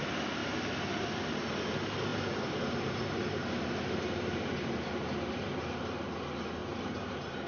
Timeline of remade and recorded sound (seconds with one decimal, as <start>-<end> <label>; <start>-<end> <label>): 0.0-0.4 recorded; 0.4-1.7 remade; 1.7-2.1 recorded; 2.1-5.3 remade; 5.3-6.6 recorded; 6.6-7.5 remade